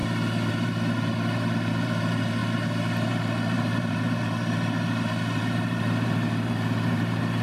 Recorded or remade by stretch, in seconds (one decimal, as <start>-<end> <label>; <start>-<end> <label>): 0.0-0.5 recorded; 0.5-2.4 remade; 2.4-3.1 recorded; 3.1-7.4 remade